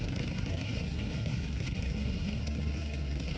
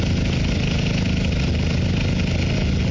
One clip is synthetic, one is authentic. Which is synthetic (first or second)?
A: first